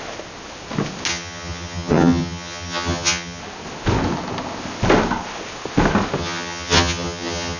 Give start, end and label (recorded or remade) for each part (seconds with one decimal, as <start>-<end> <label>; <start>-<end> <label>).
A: 0.0-1.1 recorded; 1.1-3.4 remade; 3.4-6.2 recorded; 6.2-7.6 remade